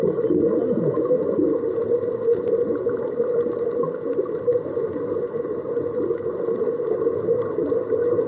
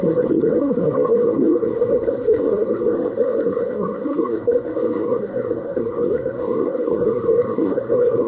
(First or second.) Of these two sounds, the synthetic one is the second